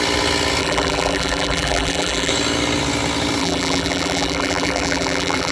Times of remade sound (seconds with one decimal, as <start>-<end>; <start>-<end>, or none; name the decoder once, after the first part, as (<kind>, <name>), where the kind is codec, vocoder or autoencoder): 0.6-2.3 (vocoder, BigVGAN v2); 3.4-5.5